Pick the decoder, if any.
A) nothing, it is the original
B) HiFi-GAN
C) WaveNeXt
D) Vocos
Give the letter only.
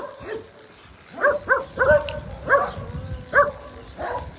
A